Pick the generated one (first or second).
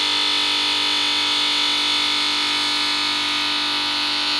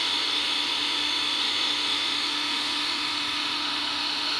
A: second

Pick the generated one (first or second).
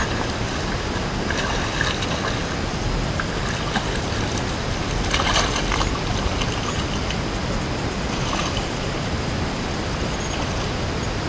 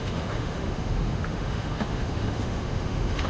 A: second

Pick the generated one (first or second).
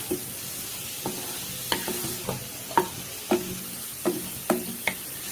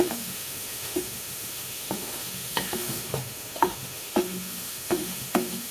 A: second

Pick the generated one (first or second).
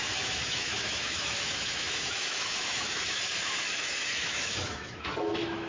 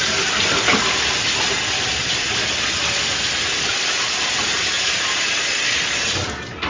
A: first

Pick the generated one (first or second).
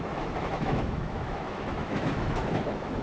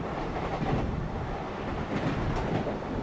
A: first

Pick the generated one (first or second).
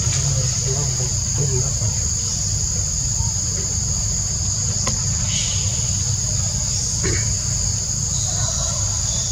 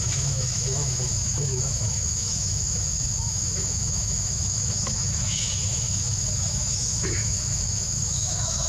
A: second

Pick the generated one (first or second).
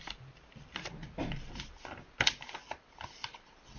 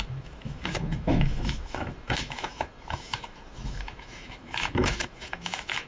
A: second